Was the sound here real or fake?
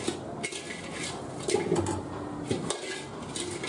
real